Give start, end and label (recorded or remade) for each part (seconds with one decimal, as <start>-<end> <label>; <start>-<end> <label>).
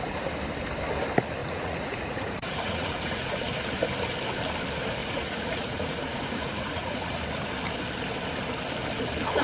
0.0-1.4 recorded; 1.4-3.5 remade; 3.5-5.0 recorded; 5.0-7.2 remade; 7.2-9.4 recorded